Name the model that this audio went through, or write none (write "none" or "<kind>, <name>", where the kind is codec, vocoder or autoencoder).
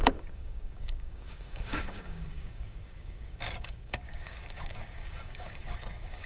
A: codec, DAC